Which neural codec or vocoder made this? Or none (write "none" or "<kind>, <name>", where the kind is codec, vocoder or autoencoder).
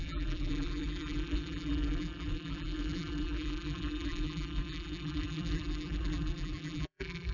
vocoder, BigVGAN v2